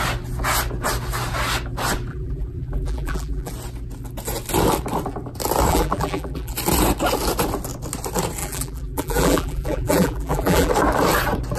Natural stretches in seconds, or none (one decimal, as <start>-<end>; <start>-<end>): 0.0-2.1; 3.5-5.7; 6.5-8.4; 10.7-11.6